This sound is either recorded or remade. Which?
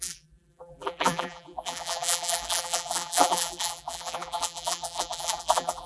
remade